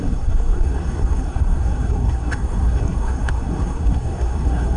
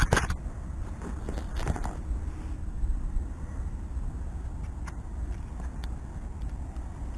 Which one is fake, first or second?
first